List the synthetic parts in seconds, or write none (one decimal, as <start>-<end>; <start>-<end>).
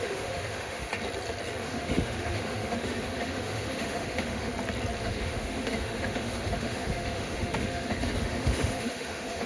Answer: 0.0-0.9; 1.6-4.5; 5.0-9.5